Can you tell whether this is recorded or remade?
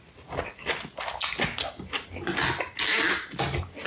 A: recorded